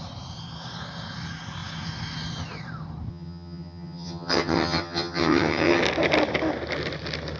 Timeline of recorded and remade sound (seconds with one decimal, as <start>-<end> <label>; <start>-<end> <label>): 0.0-3.1 recorded; 3.1-5.8 remade; 5.8-7.4 recorded